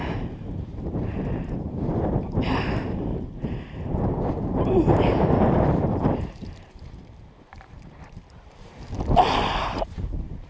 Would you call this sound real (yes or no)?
no